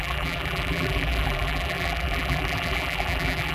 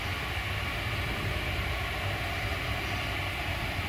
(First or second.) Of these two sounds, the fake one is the first